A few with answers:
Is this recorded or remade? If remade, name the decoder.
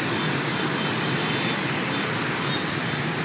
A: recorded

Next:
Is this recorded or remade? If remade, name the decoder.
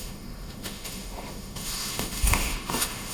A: remade, autoencoder, DAC-VAE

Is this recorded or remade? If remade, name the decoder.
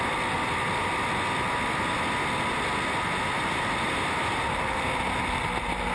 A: recorded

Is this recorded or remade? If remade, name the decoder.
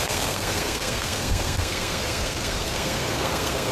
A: remade, codec, SNAC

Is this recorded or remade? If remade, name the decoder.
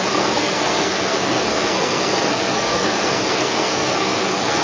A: remade, codec, SNAC